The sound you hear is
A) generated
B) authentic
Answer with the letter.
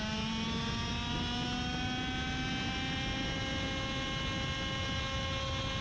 B